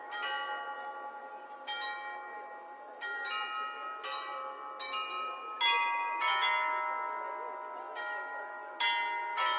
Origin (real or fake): real